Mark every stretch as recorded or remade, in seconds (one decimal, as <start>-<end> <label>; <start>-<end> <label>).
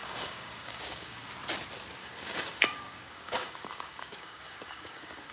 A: 0.0-1.3 remade; 1.3-2.0 recorded; 2.0-5.3 remade